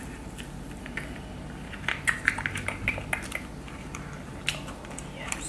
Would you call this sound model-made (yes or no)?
no